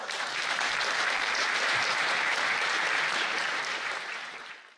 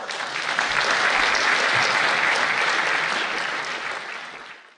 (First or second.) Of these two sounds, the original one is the second